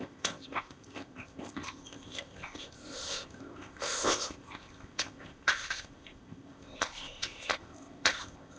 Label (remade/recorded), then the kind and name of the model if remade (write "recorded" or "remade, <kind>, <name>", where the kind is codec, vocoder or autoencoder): remade, codec, ZipCodec